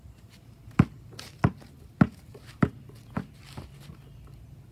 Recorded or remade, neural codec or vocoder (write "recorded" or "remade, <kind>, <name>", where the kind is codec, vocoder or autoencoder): recorded